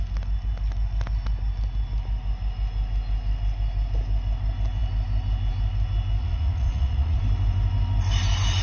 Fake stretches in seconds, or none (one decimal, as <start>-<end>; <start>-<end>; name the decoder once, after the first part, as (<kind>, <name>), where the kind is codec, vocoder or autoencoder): 6.2-7.2 (vocoder, Vocos)